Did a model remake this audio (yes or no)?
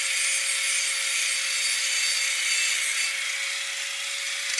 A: no